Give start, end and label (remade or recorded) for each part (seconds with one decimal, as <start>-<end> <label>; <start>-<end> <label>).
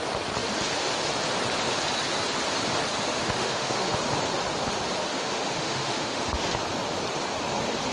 0.0-3.1 recorded; 3.1-4.0 remade; 4.0-5.1 recorded; 5.1-6.4 remade; 6.4-7.9 recorded